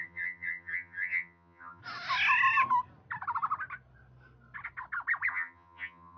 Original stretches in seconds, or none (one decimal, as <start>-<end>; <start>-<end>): 1.8-5.3